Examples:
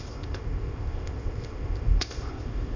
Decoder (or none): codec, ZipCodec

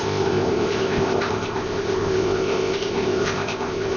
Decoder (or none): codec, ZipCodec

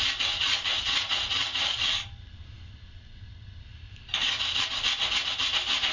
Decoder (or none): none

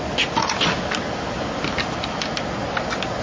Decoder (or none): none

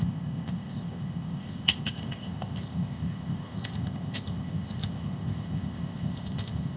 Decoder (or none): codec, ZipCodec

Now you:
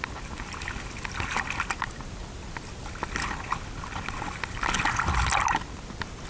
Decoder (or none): none